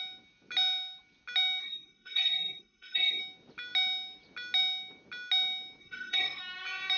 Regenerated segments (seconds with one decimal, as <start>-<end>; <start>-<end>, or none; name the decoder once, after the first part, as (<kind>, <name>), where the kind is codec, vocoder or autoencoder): 1.6-3.2 (codec, SNAC); 5.8-6.4